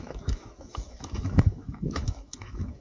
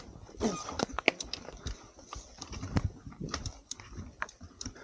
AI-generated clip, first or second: first